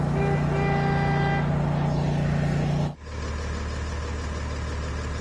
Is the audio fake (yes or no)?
no